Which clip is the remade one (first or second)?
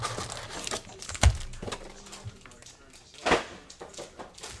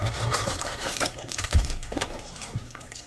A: second